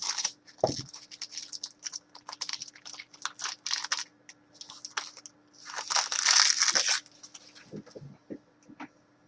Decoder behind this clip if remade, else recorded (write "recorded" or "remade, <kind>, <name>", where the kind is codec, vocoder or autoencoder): recorded